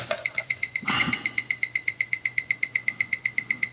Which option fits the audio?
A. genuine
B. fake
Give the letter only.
B